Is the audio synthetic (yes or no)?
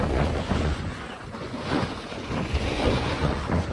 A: yes